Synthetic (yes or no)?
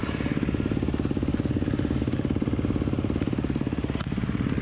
no